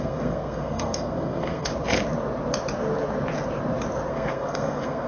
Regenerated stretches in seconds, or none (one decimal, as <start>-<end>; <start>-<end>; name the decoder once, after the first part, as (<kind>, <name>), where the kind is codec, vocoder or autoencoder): 0.0-1.7 (codec, SNAC); 4.1-5.1